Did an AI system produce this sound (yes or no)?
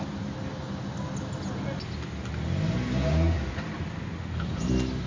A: no